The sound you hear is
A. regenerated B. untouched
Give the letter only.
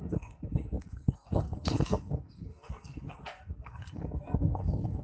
A